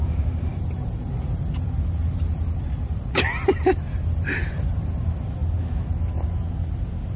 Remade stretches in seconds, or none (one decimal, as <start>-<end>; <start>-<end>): 0.5-4.8